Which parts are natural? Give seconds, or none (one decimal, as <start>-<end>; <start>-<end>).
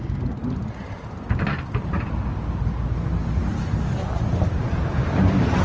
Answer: 0.0-5.6